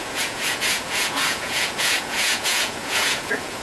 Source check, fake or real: fake